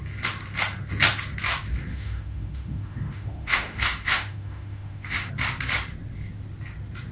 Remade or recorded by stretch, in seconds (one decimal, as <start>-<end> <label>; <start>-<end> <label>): 0.0-1.9 recorded; 1.9-5.3 remade; 5.3-7.1 recorded